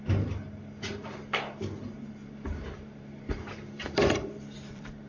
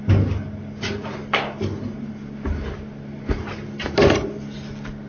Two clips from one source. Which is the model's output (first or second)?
first